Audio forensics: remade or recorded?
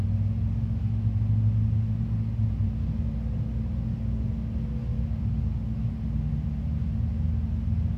recorded